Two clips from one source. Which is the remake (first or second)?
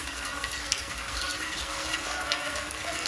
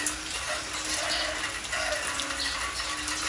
first